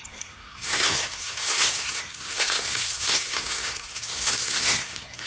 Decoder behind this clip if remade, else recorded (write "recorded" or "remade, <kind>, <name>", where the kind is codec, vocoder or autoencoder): remade, codec, SNAC